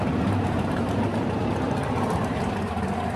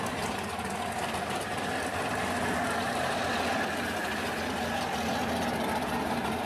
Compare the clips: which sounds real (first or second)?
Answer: second